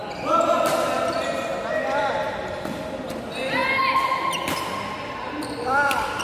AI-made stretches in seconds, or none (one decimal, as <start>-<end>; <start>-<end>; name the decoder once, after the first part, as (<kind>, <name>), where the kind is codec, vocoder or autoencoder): 0.0-1.5 (vocoder, BigVGAN v2); 2.1-3.6; 4.4-6.2